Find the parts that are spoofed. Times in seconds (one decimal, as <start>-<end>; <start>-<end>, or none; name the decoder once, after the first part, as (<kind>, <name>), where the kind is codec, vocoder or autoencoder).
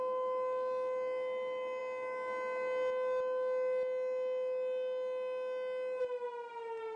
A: none